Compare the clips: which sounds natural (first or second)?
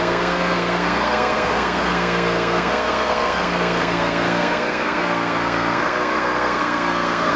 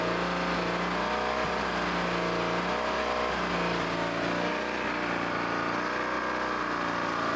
second